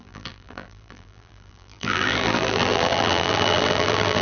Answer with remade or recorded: remade